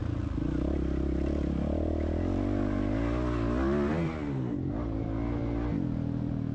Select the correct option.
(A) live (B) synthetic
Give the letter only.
A